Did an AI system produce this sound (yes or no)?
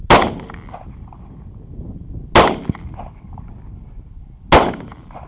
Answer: no